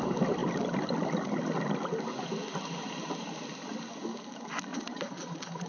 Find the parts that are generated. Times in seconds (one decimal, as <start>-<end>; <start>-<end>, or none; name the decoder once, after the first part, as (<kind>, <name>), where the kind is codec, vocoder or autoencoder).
4.7-5.7 (vocoder, Vocos)